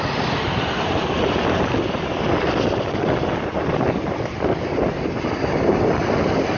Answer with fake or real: real